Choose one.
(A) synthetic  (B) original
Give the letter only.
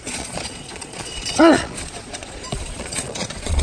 A